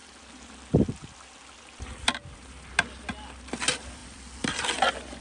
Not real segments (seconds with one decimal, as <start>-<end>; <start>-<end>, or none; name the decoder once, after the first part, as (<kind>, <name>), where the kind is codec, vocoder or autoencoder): none